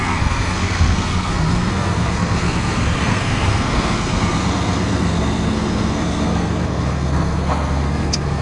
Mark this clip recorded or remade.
remade